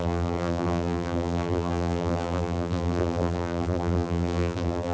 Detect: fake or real fake